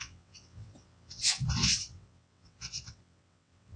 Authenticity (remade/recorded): remade